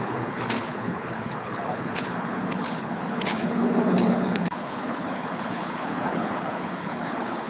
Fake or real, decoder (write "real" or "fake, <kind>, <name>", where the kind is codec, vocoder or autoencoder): fake, codec, HILCodec